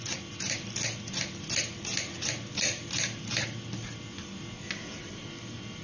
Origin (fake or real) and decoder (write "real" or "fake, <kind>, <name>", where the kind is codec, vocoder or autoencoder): real